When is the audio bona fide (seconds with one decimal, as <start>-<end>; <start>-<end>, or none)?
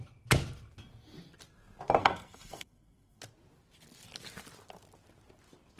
0.0-2.0; 3.2-5.8